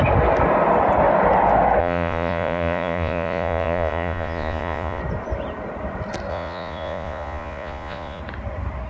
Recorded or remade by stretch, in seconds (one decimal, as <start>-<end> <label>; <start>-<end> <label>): 0.0-1.8 recorded; 1.8-5.0 remade; 5.0-6.3 recorded; 6.3-8.2 remade; 8.2-8.9 recorded